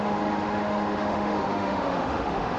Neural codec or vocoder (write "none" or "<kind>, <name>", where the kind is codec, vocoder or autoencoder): autoencoder, DAC-VAE